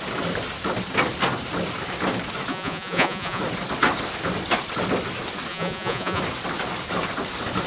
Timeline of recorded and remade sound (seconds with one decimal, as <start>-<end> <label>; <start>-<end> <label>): 0.0-2.5 recorded; 2.5-3.4 remade; 3.4-5.5 recorded; 5.5-6.2 remade; 6.2-7.7 recorded